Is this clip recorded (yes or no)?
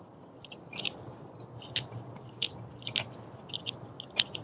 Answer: yes